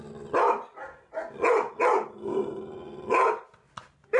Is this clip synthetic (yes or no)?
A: no